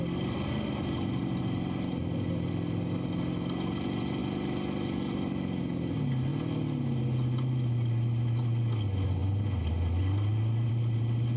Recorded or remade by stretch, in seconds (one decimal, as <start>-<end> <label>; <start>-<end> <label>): 0.0-11.4 recorded

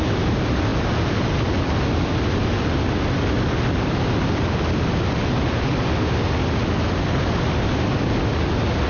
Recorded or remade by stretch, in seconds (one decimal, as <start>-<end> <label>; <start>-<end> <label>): 0.0-8.9 recorded